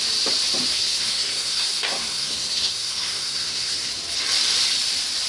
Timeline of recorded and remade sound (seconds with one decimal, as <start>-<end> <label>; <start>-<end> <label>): 0.0-0.7 recorded; 0.7-3.9 remade; 3.9-5.3 recorded